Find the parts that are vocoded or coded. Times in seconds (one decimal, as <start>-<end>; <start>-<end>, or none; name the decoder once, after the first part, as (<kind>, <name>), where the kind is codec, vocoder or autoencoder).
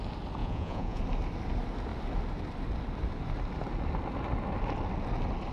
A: 0.4-1.0 (vocoder, Vocos)